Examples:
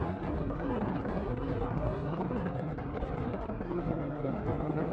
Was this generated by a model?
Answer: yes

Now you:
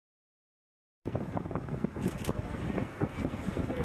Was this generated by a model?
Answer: yes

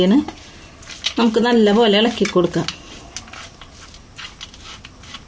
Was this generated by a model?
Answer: no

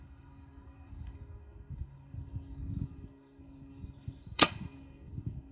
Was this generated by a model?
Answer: yes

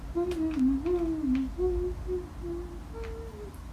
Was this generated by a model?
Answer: no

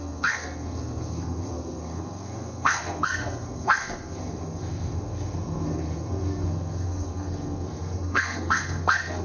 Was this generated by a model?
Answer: yes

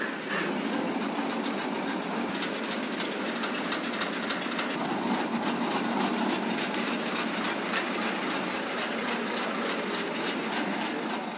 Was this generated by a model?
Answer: no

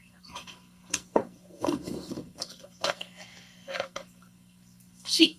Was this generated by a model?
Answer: yes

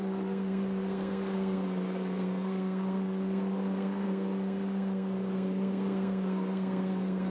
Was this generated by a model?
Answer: yes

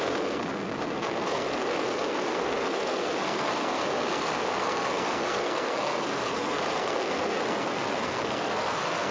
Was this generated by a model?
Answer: yes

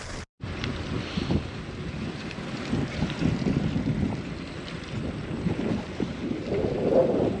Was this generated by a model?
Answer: no